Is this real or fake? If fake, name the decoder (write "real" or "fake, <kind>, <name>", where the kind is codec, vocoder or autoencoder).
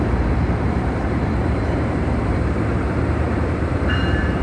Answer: fake, vocoder, BigVGAN v2